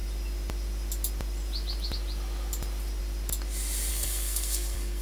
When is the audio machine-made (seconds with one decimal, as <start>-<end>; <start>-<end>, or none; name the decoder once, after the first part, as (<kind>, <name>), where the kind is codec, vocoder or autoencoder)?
3.9-5.0 (codec, SNAC)